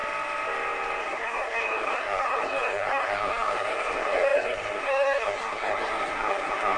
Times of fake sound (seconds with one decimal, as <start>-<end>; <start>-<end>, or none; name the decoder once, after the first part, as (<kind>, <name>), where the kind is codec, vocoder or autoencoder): 1.0-6.8 (codec, SNAC)